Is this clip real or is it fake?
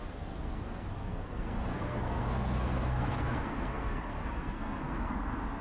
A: fake